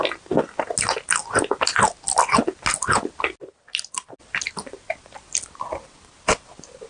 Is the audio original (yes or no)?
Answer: yes